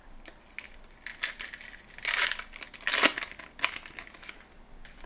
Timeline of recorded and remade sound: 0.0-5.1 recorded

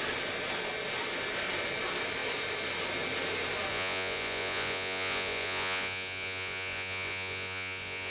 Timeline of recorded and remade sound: 0.0-3.7 recorded; 3.7-8.1 remade